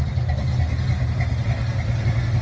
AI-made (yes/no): no